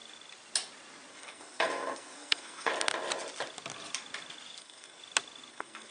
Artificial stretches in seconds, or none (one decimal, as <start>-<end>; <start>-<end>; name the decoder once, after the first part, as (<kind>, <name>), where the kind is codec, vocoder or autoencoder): 1.1-2.7 (codec, SNAC); 4.6-5.0; 5.5-5.9

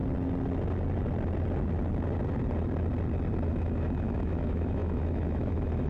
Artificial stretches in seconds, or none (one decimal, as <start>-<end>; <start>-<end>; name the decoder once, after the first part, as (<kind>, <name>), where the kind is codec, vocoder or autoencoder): 3.5-5.9 (autoencoder, DAC-VAE)

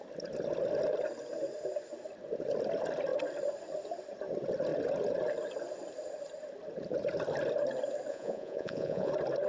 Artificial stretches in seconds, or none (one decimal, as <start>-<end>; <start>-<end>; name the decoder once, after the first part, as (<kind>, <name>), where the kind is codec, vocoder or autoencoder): 8.1-9.1 (vocoder, Vocos)

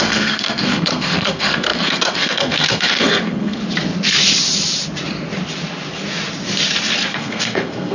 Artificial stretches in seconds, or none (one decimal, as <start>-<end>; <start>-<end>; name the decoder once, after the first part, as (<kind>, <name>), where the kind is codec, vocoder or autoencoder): 0.0-3.6 (codec, SNAC); 7.1-7.9

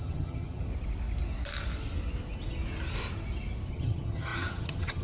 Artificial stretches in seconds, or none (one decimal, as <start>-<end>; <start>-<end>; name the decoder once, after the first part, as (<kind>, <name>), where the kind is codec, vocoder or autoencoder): 0.0-0.7 (vocoder, HiFi-GAN); 3.7-5.0

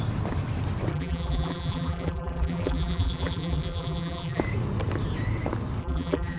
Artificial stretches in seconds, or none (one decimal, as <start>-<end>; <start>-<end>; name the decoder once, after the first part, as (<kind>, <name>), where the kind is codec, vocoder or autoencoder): 0.9-4.4 (vocoder, BigVGAN v2); 5.8-6.4

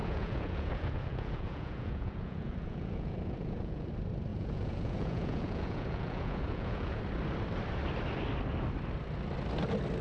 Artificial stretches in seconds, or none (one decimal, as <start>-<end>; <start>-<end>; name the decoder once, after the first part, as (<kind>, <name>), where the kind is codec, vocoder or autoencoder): 0.0-3.9 (vocoder, Vocos); 4.3-7.0

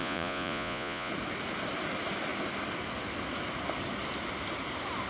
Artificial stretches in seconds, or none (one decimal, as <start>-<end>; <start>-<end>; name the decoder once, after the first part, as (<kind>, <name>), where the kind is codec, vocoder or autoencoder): 0.0-1.1 (vocoder, Vocos)